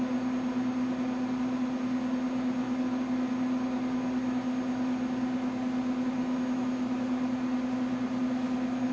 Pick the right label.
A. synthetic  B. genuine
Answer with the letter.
B